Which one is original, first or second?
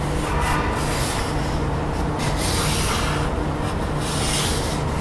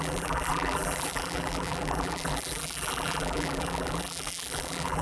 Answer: first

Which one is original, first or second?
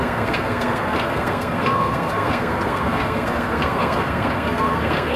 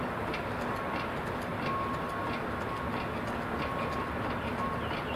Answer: second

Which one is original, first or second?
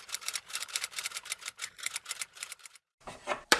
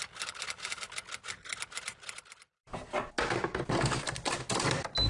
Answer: second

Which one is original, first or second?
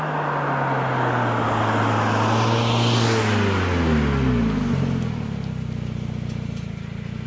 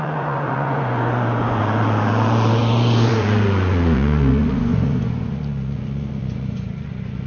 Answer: first